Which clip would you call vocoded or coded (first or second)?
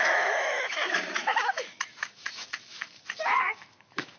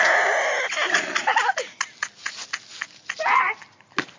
first